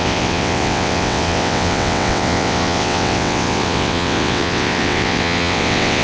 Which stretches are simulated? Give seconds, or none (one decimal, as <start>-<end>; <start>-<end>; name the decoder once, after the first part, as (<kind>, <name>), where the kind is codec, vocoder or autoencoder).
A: 0.0-6.0 (vocoder, WaveNeXt)